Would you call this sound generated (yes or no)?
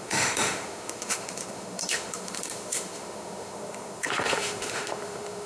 yes